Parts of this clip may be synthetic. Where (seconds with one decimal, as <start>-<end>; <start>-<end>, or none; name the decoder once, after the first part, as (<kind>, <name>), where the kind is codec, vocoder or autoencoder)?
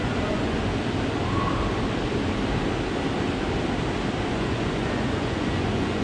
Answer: 0.0-0.7 (vocoder, Vocos); 4.3-6.0